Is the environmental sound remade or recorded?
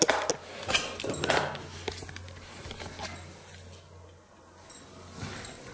recorded